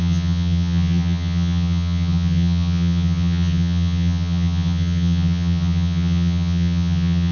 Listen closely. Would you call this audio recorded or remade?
remade